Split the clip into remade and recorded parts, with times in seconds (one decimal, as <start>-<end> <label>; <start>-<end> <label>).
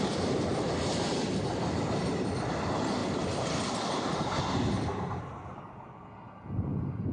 0.0-7.1 recorded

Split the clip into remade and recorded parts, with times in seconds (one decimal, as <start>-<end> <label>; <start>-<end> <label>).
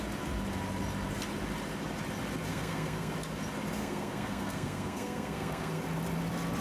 0.0-2.5 recorded; 2.5-3.1 remade; 3.1-3.8 recorded; 3.8-5.8 remade; 5.8-6.6 recorded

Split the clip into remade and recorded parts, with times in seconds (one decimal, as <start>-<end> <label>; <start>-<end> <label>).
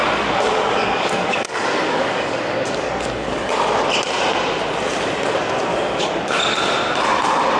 0.0-3.5 remade; 3.5-5.7 recorded; 5.7-6.4 remade; 6.4-7.6 recorded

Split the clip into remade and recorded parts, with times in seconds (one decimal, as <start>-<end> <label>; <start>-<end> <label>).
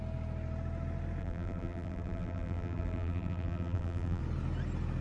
0.0-1.2 recorded; 1.2-4.2 remade; 4.2-5.0 recorded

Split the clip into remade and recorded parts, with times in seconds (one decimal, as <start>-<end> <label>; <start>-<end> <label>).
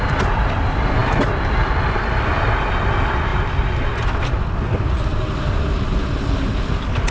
0.0-7.1 recorded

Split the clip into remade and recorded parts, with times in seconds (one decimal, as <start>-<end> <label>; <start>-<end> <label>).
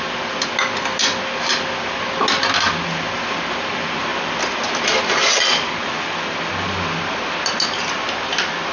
0.0-8.7 recorded